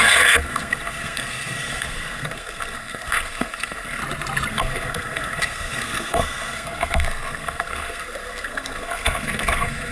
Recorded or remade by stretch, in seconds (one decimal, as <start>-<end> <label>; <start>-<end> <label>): 0.0-4.0 remade; 4.0-4.5 recorded; 4.5-9.9 remade

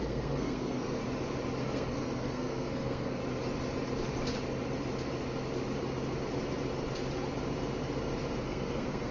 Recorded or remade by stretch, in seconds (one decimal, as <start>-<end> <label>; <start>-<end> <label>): 0.0-1.0 remade; 1.0-1.6 recorded; 1.6-3.2 remade; 3.2-8.4 recorded; 8.4-9.1 remade

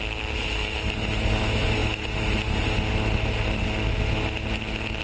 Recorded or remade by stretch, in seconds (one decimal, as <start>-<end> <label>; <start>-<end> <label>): 0.0-5.0 recorded